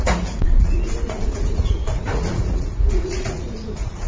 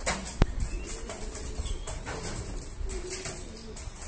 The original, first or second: second